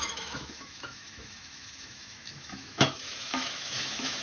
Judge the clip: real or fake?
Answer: fake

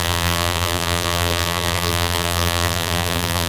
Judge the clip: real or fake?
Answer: fake